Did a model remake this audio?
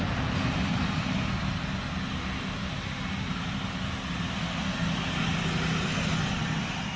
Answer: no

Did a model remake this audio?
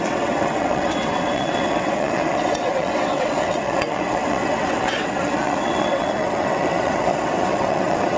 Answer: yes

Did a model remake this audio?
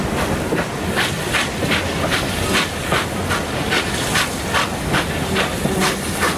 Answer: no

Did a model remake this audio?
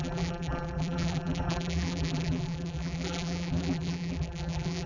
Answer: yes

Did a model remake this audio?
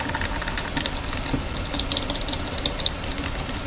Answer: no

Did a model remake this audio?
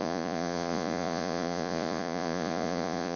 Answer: yes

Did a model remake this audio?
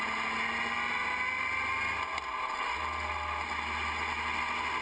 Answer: no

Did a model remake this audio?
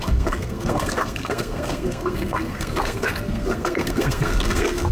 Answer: yes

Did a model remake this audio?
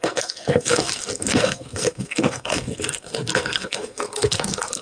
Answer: yes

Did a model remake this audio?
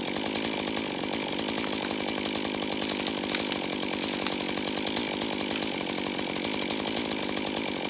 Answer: no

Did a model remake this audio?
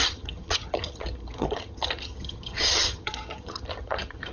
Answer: yes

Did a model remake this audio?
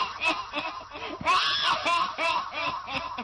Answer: no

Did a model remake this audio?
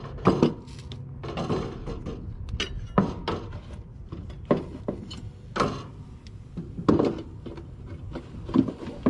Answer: no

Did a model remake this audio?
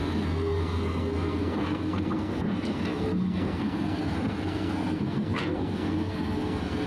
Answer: yes